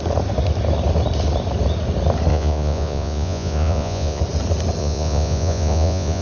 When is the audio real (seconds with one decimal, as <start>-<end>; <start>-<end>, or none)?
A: 0.0-2.3; 4.2-4.8